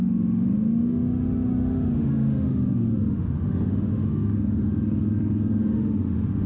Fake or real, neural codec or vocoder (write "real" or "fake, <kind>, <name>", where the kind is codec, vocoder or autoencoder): fake, autoencoder, DAC-VAE